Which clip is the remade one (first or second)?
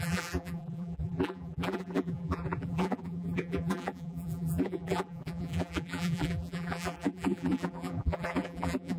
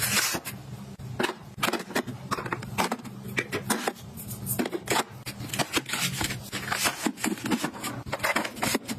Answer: first